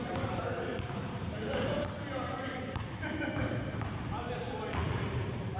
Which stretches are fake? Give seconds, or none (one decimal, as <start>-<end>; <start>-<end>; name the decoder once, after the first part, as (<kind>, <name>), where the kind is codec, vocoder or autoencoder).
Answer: 0.0-5.6 (vocoder, BigVGAN v2)